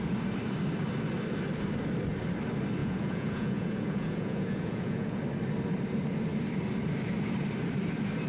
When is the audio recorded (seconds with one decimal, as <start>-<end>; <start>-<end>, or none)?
0.0-2.8; 5.2-8.3